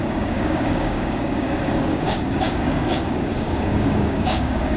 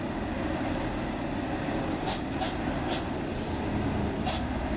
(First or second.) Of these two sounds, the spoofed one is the first